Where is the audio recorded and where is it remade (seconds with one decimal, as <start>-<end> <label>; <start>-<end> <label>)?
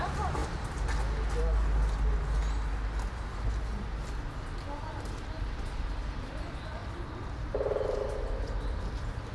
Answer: 0.0-0.4 remade; 0.4-5.0 recorded; 5.0-9.3 remade